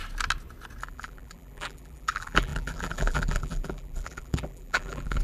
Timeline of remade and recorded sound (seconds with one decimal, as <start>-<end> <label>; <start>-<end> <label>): 0.0-0.8 recorded; 0.8-5.2 remade